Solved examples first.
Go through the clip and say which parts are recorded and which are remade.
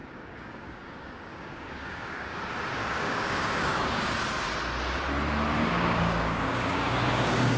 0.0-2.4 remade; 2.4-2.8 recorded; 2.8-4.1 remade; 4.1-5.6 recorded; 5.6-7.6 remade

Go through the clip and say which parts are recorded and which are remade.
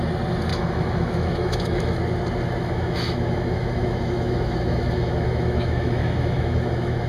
0.0-0.5 recorded; 0.5-2.0 remade; 2.0-2.6 recorded; 2.6-7.1 remade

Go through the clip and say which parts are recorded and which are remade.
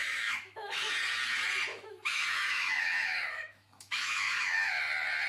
0.0-0.9 remade; 0.9-1.7 recorded; 1.7-4.8 remade; 4.8-5.3 recorded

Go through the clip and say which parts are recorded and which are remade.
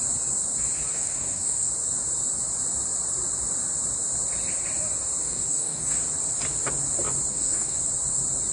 0.0-0.9 recorded; 0.9-1.7 remade; 1.7-5.2 recorded; 5.2-6.0 remade; 6.0-7.3 recorded; 7.3-7.8 remade; 7.8-8.5 recorded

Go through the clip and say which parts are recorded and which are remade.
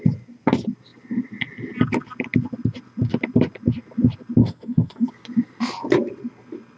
0.0-4.4 recorded; 4.4-5.1 remade; 5.1-6.8 recorded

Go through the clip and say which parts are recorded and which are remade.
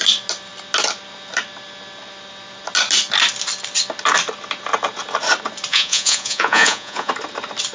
0.0-5.7 recorded; 5.7-7.1 remade; 7.1-7.7 recorded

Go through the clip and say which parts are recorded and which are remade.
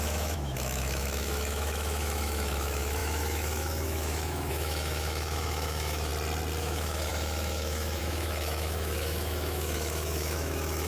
0.0-6.1 remade; 6.1-6.6 recorded; 6.6-10.9 remade